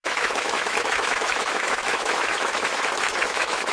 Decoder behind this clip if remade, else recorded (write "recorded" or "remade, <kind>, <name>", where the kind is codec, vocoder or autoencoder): remade, autoencoder, DAC-VAE